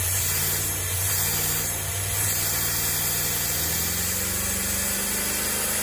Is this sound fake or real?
real